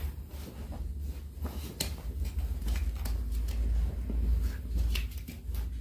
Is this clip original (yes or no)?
yes